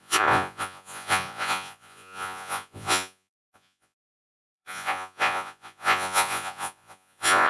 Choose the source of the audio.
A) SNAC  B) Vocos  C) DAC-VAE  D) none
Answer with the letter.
B